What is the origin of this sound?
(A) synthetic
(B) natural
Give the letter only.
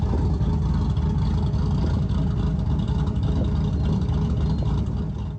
B